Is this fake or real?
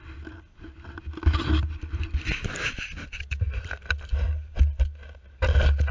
real